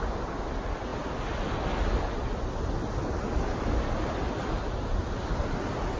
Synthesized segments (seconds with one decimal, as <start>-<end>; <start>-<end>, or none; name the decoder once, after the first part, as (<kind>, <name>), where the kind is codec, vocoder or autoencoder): none